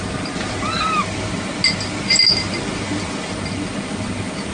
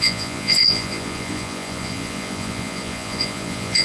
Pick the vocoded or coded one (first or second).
second